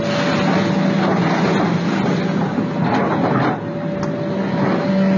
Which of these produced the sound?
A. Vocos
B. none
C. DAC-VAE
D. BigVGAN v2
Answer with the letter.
B